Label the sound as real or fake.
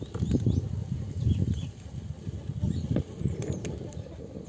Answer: real